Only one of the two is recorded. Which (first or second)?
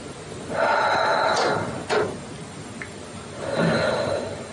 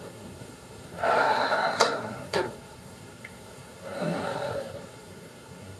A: first